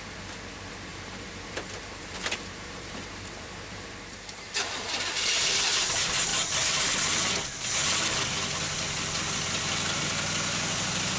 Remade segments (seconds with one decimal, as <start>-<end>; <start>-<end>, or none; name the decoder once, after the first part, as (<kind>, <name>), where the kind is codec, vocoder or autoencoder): 0.9-5.7 (vocoder, BigVGAN v2); 6.3-6.9